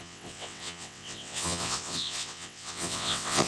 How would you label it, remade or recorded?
remade